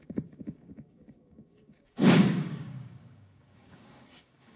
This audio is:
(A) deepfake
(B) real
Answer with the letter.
A